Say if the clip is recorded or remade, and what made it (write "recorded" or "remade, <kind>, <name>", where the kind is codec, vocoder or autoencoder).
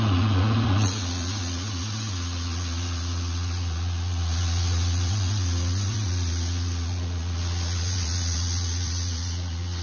remade, vocoder, Vocos